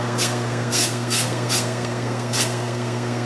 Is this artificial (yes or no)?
yes